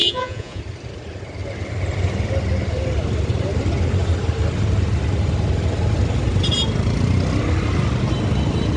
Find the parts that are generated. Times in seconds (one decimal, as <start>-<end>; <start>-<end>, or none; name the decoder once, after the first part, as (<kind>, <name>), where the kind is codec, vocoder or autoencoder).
0.0-0.6 (vocoder, Vocos)

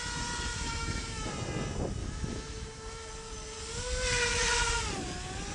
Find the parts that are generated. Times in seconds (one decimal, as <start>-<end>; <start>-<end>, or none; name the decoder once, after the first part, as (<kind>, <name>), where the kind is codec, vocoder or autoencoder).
0.5-1.3 (autoencoder, DAC-VAE); 2.0-3.1